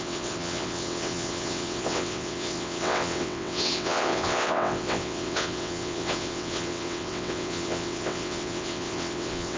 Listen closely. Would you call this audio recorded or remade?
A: remade